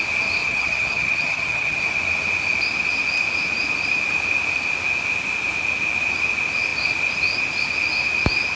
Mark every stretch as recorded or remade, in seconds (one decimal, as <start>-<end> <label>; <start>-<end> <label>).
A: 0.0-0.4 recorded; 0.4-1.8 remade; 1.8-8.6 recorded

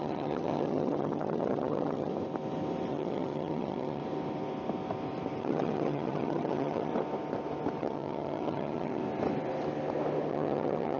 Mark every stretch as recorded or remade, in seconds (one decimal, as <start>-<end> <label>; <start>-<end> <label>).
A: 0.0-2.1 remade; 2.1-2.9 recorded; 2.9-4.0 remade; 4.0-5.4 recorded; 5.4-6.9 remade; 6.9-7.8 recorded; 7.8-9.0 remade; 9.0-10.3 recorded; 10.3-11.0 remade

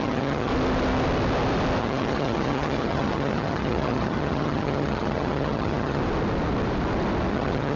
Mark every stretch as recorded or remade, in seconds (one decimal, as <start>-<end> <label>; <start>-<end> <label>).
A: 0.0-0.5 remade; 0.5-1.8 recorded; 1.8-6.0 remade; 6.0-7.3 recorded; 7.3-7.8 remade

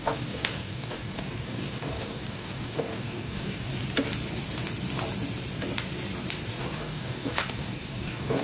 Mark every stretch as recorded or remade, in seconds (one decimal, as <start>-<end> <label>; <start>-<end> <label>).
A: 0.0-3.7 remade; 3.7-6.5 recorded; 6.5-8.4 remade

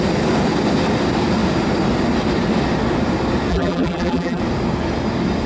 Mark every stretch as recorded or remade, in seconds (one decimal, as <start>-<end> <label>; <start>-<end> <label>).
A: 0.0-3.5 recorded; 3.5-4.4 remade; 4.4-5.5 recorded